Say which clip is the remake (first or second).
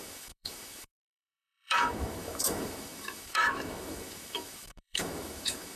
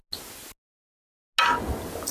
first